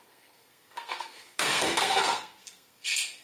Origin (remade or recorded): remade